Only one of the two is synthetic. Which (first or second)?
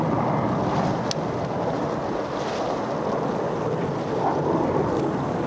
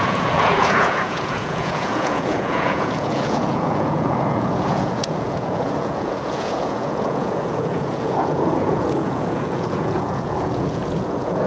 second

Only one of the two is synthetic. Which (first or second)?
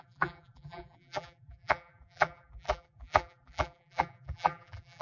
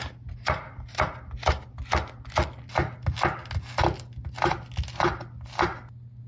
first